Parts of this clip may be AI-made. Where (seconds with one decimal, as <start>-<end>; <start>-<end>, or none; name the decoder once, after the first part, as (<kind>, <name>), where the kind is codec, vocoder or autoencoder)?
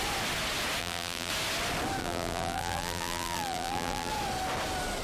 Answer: 0.8-1.3 (vocoder, BigVGAN v2); 2.0-4.1